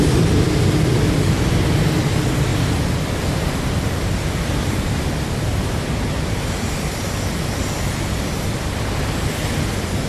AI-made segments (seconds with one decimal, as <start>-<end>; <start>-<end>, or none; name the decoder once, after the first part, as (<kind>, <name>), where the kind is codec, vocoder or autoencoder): none